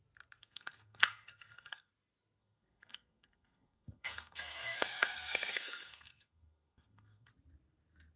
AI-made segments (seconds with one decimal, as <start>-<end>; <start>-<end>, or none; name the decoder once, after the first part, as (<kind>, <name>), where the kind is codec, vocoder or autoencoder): 0.4-1.9 (codec, SNAC); 2.4-7.3